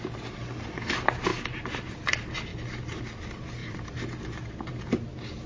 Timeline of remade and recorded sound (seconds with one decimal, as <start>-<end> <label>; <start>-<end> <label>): 0.0-2.5 recorded; 2.5-3.0 remade; 3.0-3.6 recorded; 3.6-4.2 remade; 4.2-5.5 recorded